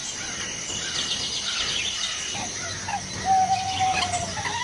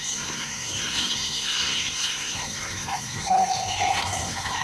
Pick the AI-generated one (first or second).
second